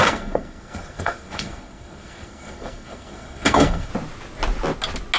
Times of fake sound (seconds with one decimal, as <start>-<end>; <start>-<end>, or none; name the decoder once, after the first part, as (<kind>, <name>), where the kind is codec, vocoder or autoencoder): 0.0-3.9 (codec, SNAC)

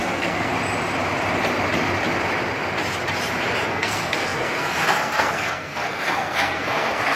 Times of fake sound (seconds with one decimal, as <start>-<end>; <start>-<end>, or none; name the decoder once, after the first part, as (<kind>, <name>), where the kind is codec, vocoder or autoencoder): 0.0-0.5 (codec, SNAC); 3.7-7.2

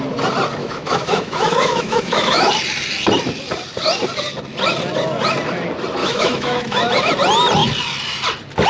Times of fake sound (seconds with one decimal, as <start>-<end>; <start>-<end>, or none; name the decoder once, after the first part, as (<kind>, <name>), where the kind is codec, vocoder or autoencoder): 0.6-2.5 (autoencoder, DAC-VAE); 6.0-6.8

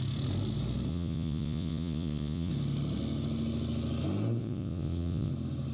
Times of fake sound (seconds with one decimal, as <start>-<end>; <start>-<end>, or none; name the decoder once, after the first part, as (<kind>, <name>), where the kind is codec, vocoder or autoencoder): 0.9-2.5 (vocoder, Vocos); 4.4-5.3